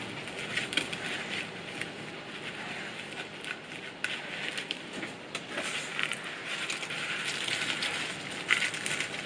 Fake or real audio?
real